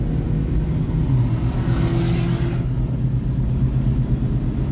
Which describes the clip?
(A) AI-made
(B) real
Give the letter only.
B